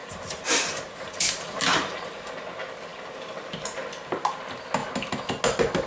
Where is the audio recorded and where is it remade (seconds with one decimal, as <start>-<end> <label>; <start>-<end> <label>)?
0.0-2.3 remade; 2.3-5.9 recorded